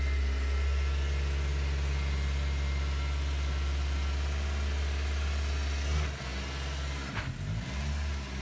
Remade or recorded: recorded